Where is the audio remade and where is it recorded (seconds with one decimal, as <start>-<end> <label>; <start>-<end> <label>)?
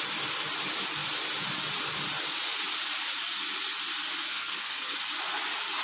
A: 0.0-4.3 recorded; 4.3-4.9 remade; 4.9-5.8 recorded